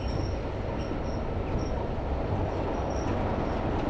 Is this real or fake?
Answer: real